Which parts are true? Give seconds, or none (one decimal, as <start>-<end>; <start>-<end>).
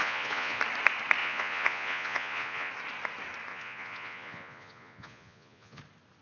0.6-1.2; 2.7-3.5; 5.8-6.2